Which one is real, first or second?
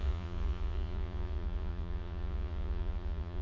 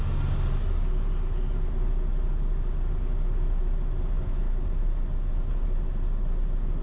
second